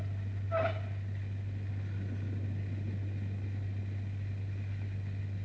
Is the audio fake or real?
real